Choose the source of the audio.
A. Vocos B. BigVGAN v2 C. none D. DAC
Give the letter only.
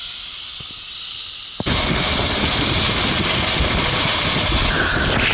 C